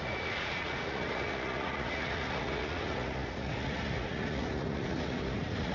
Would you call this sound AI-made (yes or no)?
yes